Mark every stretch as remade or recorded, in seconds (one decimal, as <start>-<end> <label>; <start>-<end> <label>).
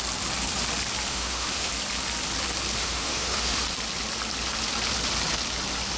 0.0-1.1 recorded; 1.1-1.7 remade; 1.7-2.8 recorded; 2.8-3.6 remade; 3.6-6.0 recorded